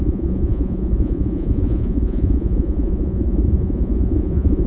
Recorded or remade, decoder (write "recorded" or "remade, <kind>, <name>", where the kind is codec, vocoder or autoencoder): remade, vocoder, Vocos